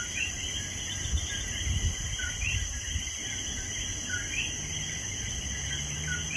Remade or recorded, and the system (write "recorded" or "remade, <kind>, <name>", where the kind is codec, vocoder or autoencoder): recorded